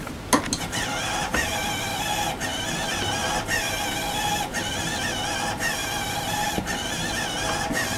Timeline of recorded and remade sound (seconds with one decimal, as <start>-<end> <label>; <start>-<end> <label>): 0.0-5.8 recorded; 5.8-6.5 remade; 6.5-8.0 recorded